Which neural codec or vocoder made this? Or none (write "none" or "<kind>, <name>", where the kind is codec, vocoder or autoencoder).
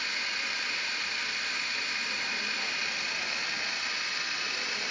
none